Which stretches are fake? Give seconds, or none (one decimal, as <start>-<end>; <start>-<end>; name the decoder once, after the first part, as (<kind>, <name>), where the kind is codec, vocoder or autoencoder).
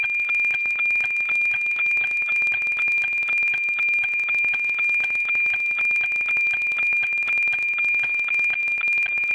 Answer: none